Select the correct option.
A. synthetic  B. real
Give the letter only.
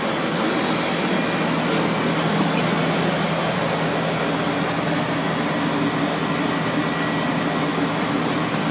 B